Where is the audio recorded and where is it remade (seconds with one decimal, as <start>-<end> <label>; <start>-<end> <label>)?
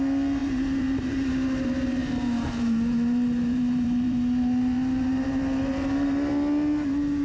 0.0-0.4 recorded; 0.4-1.3 remade; 1.3-2.0 recorded; 2.0-6.3 remade; 6.3-7.2 recorded